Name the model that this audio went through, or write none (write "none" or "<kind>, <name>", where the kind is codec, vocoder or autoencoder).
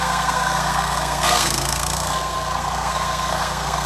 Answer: codec, SNAC